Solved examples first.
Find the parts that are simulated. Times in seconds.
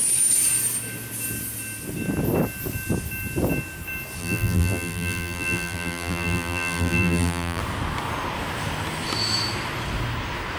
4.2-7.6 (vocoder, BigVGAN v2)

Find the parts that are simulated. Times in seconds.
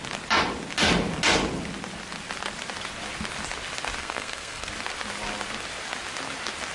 4.0-4.7 (codec, SNAC)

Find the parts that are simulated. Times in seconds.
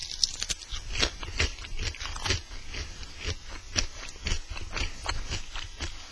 0.0-2.0 (vocoder, BigVGAN v2)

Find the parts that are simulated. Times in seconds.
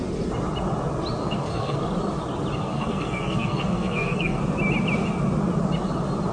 1.2-1.8 (codec, SNAC); 2.6-4.4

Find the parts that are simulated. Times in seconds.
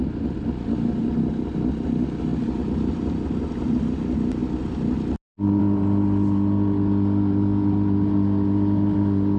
2.3-3.4 (vocoder, BigVGAN v2)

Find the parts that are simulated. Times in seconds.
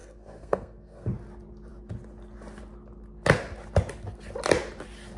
0.0-1.1 (codec, SNAC)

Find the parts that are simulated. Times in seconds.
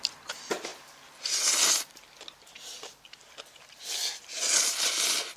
none